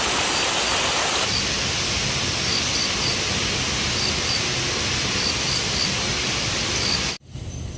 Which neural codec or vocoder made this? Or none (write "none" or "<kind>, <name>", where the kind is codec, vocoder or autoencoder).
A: none